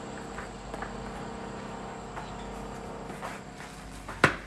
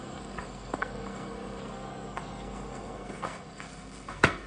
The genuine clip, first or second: first